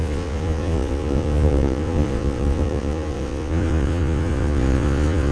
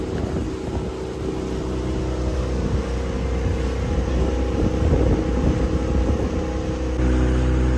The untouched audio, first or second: second